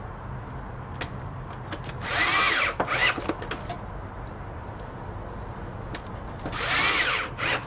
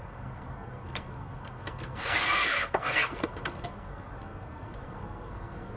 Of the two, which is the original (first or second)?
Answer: first